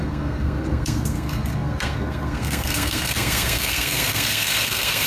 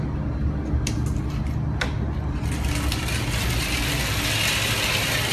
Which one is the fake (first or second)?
first